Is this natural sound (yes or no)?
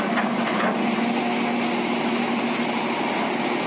yes